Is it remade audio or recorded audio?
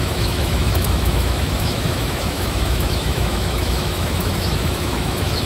remade